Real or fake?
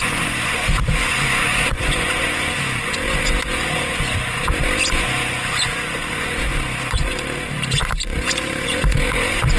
fake